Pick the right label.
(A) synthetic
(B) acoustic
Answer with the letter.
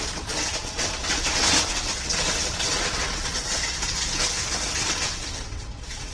A